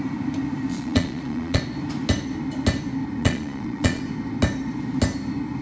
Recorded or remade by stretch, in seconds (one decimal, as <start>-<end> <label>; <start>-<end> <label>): 0.0-0.7 recorded; 0.7-1.6 remade; 1.6-3.2 recorded; 3.2-4.0 remade; 4.0-5.6 recorded